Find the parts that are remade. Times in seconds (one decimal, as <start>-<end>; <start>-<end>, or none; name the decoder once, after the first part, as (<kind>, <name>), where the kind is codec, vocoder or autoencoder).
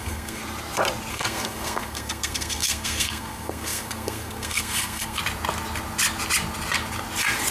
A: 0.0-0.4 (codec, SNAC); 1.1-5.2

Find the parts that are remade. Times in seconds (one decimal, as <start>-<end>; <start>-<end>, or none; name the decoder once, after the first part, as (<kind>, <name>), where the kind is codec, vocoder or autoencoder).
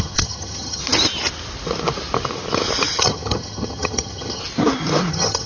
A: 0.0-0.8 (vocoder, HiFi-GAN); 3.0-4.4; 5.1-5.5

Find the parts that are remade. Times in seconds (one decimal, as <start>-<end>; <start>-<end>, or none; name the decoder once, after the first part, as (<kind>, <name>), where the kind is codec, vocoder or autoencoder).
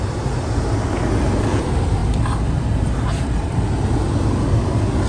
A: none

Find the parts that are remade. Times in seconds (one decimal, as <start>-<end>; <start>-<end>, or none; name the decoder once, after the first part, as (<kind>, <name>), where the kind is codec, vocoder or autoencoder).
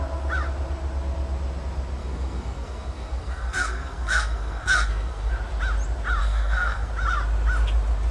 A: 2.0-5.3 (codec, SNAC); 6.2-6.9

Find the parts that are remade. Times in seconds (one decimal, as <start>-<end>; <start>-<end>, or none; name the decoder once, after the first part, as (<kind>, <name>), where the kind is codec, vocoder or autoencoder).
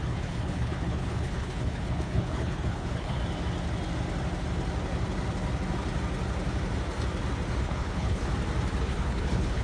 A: 0.0-3.2 (codec, HILCodec); 7.6-8.3; 8.8-9.6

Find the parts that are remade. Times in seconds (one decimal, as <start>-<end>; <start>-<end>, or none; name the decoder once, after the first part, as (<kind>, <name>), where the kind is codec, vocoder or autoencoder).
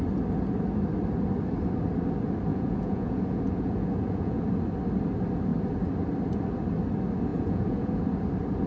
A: 2.5-4.4 (vocoder, Vocos); 7.3-8.0